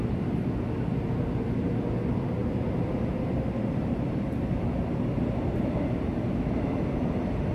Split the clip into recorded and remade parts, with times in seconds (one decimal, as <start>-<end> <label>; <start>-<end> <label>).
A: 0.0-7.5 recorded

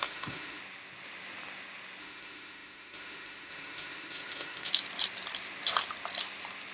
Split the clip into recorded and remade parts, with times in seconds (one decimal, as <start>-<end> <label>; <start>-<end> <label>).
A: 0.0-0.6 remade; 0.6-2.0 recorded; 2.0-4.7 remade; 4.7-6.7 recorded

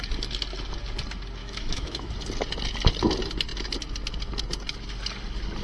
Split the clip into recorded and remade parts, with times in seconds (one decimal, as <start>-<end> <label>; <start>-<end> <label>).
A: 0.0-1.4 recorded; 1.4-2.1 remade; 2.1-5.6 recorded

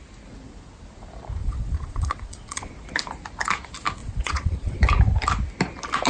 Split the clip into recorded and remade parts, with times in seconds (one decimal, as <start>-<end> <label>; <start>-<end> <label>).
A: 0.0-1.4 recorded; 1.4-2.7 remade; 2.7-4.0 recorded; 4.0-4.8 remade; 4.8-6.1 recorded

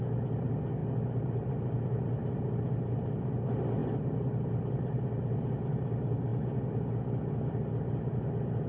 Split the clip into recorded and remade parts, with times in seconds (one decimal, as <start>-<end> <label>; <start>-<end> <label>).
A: 0.0-8.7 recorded

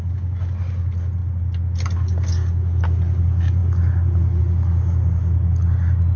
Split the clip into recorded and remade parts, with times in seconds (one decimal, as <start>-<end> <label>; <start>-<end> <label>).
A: 0.0-6.2 recorded

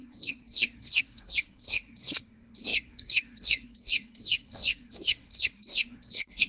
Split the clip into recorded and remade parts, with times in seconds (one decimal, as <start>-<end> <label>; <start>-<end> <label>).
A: 0.0-6.5 remade

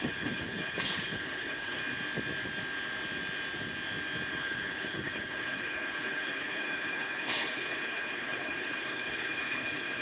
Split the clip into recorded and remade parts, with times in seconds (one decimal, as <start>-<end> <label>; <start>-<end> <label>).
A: 0.0-1.8 remade; 1.8-4.3 recorded; 4.3-10.0 remade